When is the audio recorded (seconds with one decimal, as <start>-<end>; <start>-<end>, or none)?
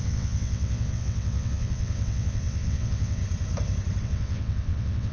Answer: 3.2-4.0